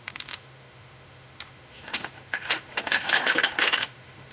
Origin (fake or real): fake